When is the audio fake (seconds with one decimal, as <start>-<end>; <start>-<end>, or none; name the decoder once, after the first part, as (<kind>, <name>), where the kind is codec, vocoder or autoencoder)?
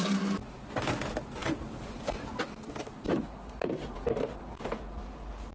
none